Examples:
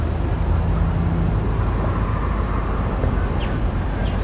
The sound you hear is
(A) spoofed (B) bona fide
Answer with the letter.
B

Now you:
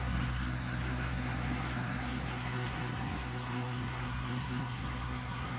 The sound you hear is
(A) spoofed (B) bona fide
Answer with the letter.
A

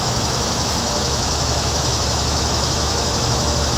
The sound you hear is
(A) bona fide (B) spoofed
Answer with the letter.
B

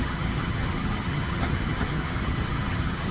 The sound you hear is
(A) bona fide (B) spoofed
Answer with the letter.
B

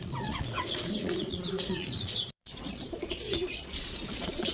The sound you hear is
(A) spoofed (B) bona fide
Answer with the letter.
A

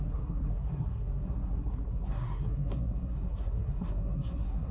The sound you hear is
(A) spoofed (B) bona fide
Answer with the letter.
A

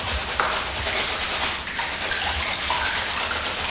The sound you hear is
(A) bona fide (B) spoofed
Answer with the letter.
A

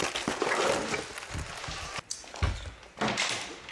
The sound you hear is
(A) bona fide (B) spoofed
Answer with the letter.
A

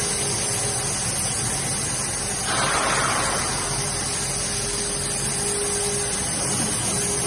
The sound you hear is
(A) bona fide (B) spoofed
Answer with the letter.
A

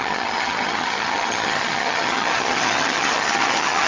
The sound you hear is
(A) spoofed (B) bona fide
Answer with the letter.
A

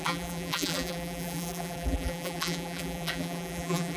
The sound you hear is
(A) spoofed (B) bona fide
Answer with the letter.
A